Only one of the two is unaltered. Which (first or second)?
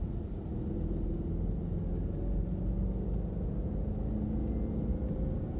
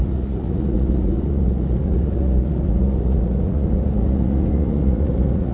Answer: first